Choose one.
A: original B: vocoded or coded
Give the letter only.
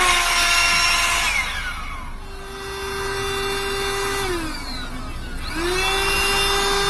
A